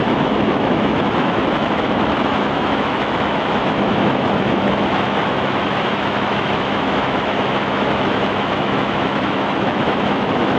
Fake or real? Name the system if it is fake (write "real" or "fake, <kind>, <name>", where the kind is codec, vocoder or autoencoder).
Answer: fake, autoencoder, DAC-VAE